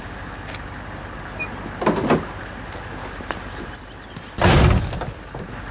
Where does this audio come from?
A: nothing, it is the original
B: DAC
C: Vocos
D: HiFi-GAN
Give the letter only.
A